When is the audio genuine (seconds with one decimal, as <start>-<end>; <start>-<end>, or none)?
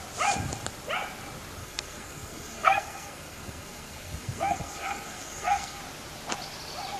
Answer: 0.0-1.6; 5.8-7.0